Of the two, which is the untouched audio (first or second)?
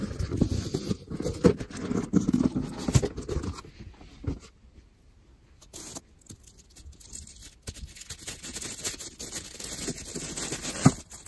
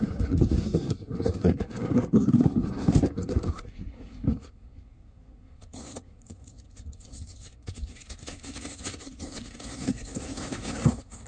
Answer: first